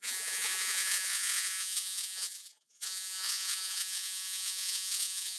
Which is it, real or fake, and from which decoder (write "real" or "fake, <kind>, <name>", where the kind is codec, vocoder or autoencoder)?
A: fake, vocoder, Vocos